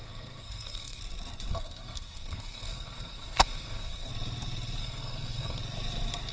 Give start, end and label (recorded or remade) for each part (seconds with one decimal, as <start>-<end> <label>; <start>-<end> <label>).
0.0-1.0 remade; 1.0-1.5 recorded; 1.5-4.1 remade; 4.1-4.8 recorded; 4.8-5.6 remade; 5.6-6.3 recorded

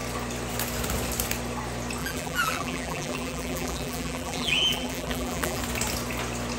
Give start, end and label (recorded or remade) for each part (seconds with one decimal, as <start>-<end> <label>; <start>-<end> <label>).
0.0-2.0 recorded; 2.0-5.6 remade; 5.6-6.6 recorded

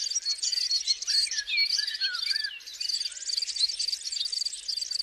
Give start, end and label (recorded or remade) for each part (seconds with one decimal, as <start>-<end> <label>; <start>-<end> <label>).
0.0-5.0 recorded

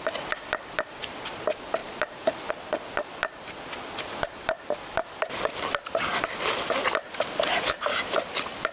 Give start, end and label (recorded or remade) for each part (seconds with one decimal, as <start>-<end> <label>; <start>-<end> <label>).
0.0-8.7 recorded

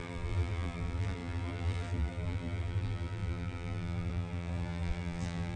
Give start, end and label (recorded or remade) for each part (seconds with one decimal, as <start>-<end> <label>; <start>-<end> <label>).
0.0-5.6 remade